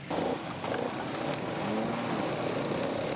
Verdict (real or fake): real